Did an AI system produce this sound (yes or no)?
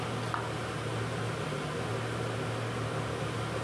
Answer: no